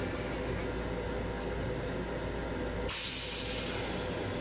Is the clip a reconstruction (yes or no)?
no